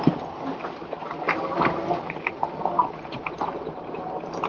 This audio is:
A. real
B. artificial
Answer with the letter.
A